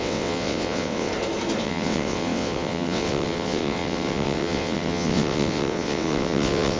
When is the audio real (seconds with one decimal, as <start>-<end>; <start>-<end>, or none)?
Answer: 1.1-1.6